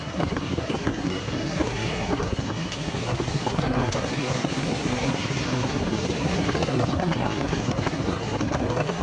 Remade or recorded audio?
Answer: remade